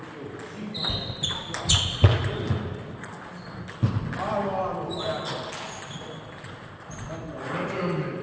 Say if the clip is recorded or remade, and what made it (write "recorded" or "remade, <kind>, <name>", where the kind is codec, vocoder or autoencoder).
recorded